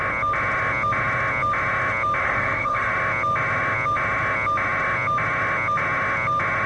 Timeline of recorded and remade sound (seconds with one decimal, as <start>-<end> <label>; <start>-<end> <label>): 0.0-2.2 recorded; 2.2-2.9 remade; 2.9-6.7 recorded